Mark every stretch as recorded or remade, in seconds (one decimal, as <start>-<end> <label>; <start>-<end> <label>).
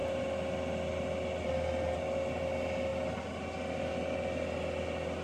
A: 0.0-5.2 recorded